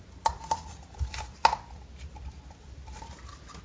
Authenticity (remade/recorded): recorded